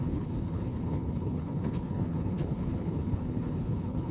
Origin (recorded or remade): remade